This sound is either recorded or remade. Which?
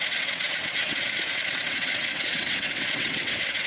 remade